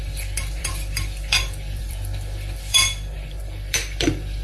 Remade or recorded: remade